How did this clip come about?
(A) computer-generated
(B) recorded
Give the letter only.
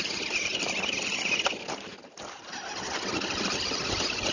B